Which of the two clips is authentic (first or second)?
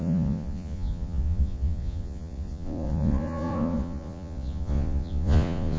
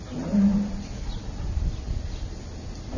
second